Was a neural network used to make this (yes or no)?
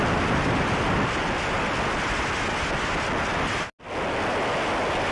no